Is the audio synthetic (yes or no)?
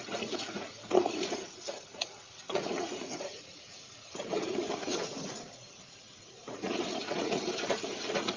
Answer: yes